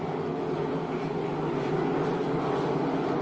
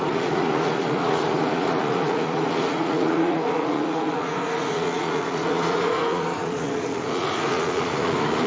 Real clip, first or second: first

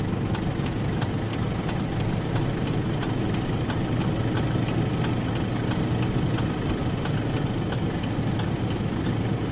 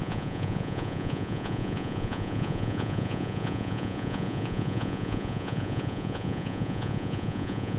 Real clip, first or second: first